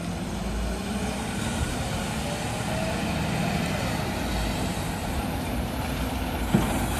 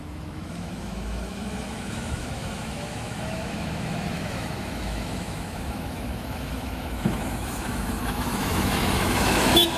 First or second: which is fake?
second